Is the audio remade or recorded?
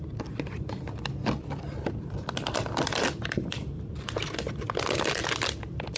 recorded